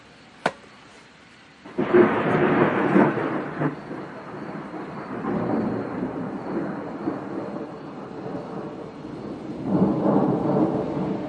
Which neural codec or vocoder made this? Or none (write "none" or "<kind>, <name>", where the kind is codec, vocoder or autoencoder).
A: vocoder, BigVGAN v2